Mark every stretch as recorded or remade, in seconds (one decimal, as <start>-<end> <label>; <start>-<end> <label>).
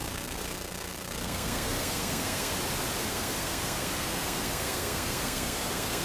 0.0-2.5 remade; 2.5-3.0 recorded; 3.0-6.0 remade